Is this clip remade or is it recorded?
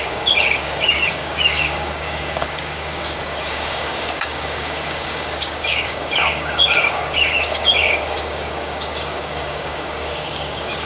remade